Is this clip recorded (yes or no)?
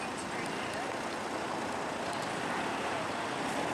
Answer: yes